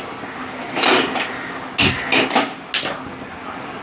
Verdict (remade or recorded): recorded